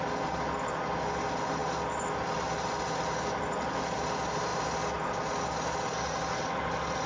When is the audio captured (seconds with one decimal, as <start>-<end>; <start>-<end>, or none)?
0.0-7.1